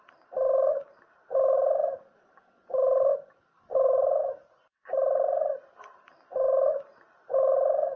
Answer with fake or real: real